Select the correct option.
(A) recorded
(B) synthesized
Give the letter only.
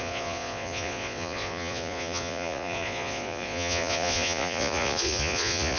B